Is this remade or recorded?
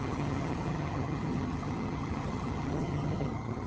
remade